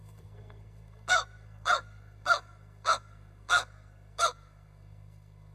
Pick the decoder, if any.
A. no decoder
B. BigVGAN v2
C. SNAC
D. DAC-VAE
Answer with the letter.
C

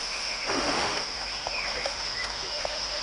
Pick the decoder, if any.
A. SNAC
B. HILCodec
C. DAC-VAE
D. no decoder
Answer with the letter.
C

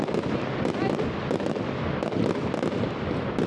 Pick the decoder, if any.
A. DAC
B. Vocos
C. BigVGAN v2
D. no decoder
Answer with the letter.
D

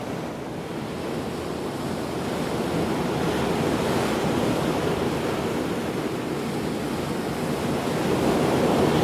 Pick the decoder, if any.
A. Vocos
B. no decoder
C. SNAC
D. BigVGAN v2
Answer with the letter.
B